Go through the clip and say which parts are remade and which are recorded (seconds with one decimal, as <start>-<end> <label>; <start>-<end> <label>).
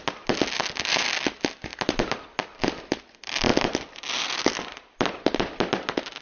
0.0-6.2 recorded